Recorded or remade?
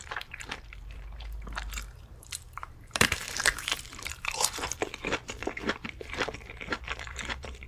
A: remade